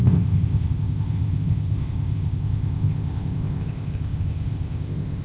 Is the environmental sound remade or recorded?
remade